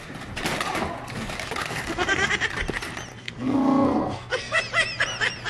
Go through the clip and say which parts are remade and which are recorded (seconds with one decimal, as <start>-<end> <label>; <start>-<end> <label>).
0.0-1.7 recorded; 1.7-2.3 remade; 2.3-3.1 recorded; 3.1-4.6 remade; 4.6-5.5 recorded